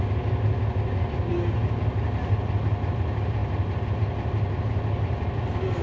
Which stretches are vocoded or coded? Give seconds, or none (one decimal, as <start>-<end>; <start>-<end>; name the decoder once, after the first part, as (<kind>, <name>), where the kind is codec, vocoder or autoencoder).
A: none